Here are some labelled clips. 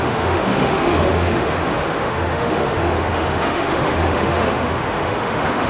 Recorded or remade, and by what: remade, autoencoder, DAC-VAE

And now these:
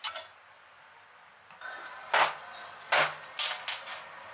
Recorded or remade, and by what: recorded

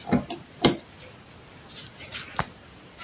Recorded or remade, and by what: recorded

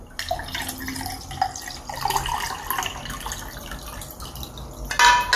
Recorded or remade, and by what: recorded